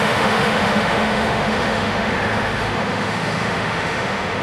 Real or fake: fake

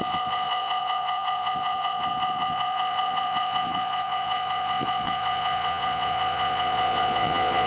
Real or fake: fake